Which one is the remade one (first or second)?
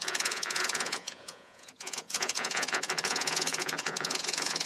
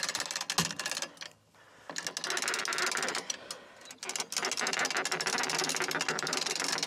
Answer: first